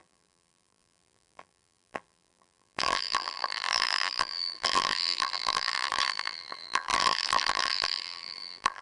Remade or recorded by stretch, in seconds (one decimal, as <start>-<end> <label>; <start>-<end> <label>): 0.0-8.8 remade